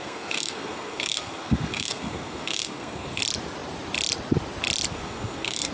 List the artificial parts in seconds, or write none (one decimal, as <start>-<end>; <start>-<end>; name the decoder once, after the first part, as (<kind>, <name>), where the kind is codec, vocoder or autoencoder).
0.0-3.2 (codec, SNAC); 4.9-5.7